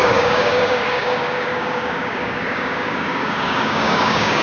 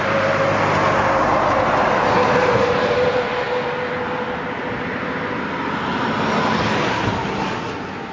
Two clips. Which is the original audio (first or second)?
second